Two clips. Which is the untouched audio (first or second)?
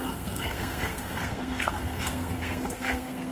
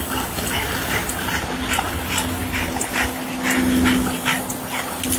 second